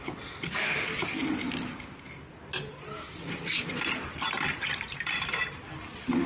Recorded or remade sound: recorded